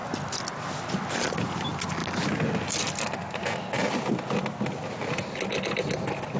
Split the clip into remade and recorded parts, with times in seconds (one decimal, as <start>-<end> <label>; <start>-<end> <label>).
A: 0.0-6.4 recorded